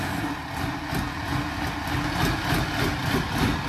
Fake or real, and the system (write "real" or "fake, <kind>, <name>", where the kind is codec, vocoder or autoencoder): real